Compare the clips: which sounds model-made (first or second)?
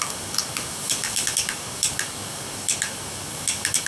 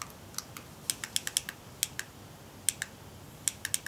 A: first